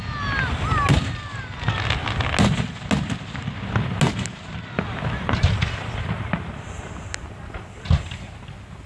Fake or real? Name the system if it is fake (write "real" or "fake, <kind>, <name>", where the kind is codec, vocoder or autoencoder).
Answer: real